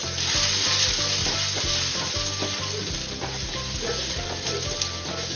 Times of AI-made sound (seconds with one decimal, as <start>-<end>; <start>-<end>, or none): none